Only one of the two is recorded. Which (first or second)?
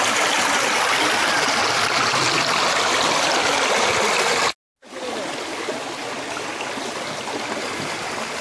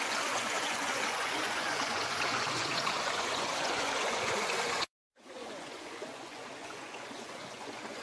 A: first